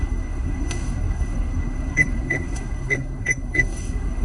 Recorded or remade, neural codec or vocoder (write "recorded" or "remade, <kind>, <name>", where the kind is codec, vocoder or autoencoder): remade, codec, SNAC